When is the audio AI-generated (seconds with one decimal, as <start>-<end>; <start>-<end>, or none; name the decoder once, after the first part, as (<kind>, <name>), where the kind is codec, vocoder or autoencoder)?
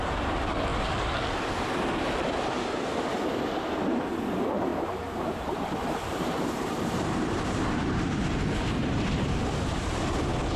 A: 4.7-8.2 (vocoder, BigVGAN v2)